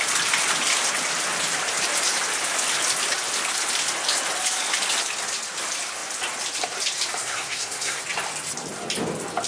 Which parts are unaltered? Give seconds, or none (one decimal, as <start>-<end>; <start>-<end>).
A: 0.0-7.2; 8.0-9.5